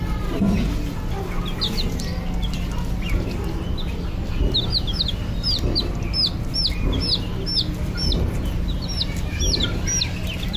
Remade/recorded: recorded